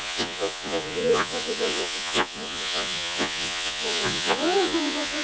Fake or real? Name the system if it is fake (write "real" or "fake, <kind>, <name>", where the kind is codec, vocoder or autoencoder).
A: fake, vocoder, Vocos